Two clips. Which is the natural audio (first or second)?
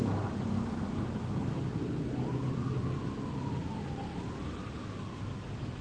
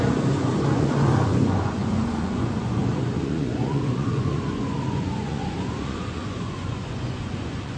first